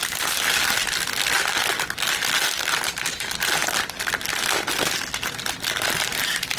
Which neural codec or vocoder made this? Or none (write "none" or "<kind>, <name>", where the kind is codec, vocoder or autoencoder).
none